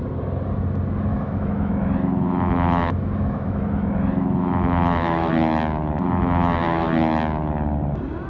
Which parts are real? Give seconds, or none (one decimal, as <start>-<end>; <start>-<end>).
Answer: 0.0-1.1; 5.3-8.3